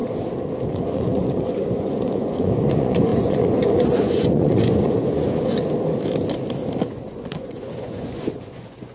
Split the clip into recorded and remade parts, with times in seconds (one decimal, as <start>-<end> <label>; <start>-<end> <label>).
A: 0.0-0.7 recorded; 0.7-5.6 remade; 5.6-6.8 recorded; 6.8-8.9 remade

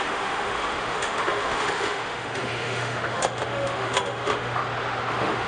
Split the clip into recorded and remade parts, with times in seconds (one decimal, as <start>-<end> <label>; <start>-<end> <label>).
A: 0.0-4.6 remade; 4.6-5.1 recorded; 5.1-5.5 remade

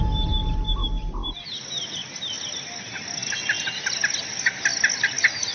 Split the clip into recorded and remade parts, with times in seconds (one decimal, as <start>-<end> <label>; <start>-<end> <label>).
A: 0.0-5.5 recorded

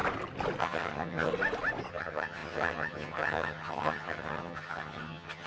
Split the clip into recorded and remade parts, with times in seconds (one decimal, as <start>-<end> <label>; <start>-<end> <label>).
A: 0.0-0.6 recorded; 0.6-1.3 remade; 1.3-1.9 recorded; 1.9-5.5 remade

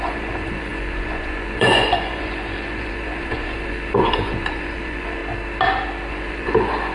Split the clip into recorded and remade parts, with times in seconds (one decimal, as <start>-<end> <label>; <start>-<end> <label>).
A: 0.0-5.2 remade; 5.2-6.1 recorded; 6.1-6.9 remade

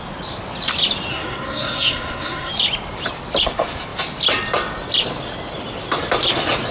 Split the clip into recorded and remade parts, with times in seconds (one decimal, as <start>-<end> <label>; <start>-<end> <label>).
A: 0.0-1.1 recorded; 1.1-2.5 remade; 2.5-6.7 recorded

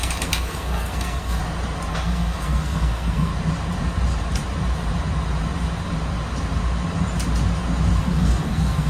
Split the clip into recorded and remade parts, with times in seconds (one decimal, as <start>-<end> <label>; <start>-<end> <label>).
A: 0.0-1.4 remade; 1.4-1.9 recorded; 1.9-3.3 remade; 3.3-8.0 recorded; 8.0-8.9 remade

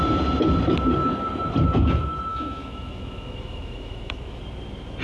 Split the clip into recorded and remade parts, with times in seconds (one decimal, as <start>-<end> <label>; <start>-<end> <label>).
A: 0.0-2.3 recorded; 2.3-4.4 remade; 4.4-5.0 recorded